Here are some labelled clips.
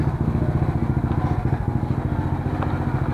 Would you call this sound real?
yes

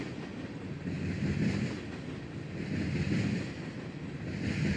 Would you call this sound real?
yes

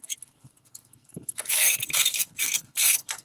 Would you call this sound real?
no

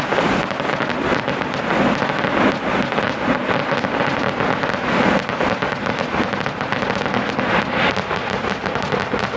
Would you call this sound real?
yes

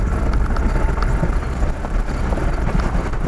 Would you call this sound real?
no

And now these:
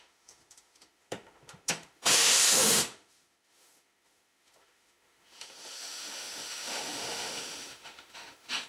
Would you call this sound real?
no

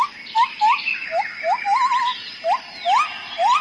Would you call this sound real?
yes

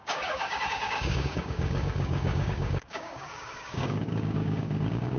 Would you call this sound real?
no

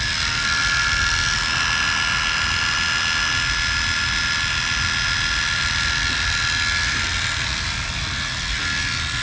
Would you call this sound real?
yes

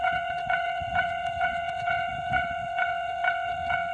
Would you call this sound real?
no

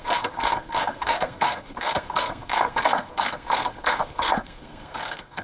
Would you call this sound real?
no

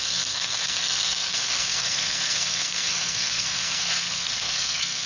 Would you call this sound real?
no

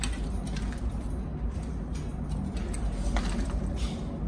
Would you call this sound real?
yes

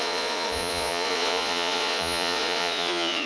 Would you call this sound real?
no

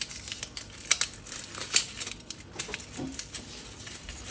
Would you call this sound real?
yes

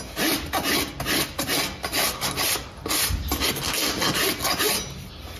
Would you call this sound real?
yes